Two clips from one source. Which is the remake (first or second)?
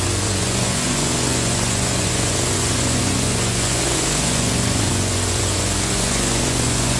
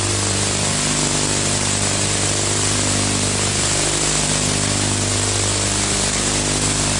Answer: first